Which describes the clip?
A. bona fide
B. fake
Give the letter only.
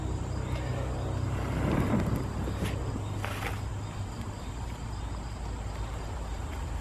A